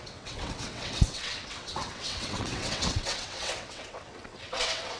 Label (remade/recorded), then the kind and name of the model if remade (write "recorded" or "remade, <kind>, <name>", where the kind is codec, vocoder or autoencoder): remade, vocoder, WaveNeXt